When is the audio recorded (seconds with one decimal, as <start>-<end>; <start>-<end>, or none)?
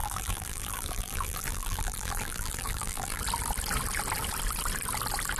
3.2-5.4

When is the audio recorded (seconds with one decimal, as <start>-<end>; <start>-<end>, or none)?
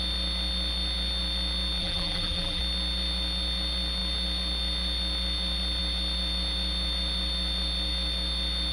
0.0-1.8; 2.6-8.7